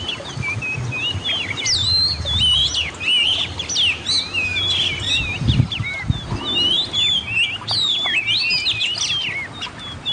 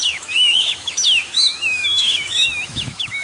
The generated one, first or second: second